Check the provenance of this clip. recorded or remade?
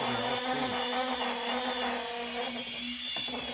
recorded